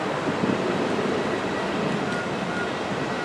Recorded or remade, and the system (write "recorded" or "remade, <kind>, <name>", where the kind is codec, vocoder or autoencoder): recorded